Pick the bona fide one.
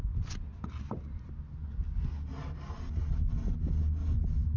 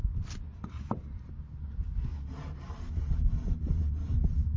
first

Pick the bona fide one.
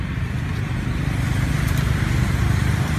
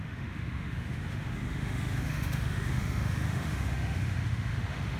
first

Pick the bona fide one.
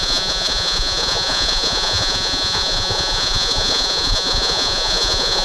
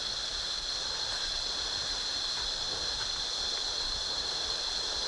second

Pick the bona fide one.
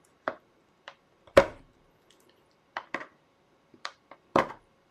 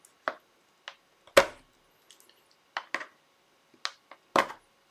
second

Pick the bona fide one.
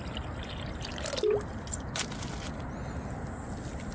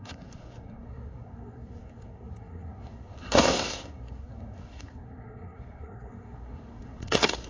first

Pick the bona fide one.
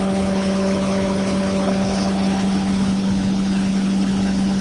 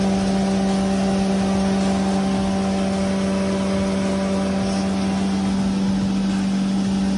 second